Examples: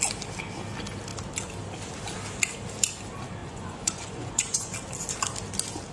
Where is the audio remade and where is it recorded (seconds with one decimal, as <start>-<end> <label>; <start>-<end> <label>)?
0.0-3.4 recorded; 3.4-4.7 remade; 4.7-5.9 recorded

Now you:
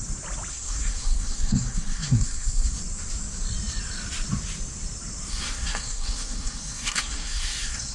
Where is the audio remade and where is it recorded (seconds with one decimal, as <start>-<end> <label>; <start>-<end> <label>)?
0.0-0.5 recorded; 0.5-2.8 remade; 2.8-5.3 recorded; 5.3-7.9 remade

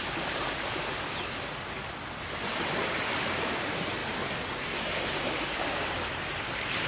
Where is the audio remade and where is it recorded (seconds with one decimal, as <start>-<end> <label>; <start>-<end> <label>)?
0.0-6.9 recorded